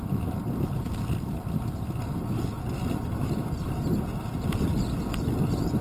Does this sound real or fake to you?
real